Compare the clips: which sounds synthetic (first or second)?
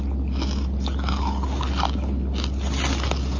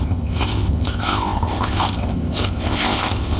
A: second